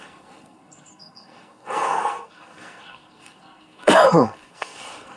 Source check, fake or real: fake